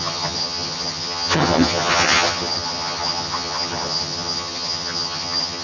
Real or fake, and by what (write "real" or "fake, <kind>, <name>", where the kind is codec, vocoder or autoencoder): fake, vocoder, HiFi-GAN